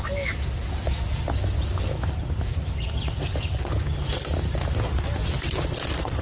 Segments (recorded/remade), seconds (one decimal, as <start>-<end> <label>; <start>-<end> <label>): 0.0-6.2 recorded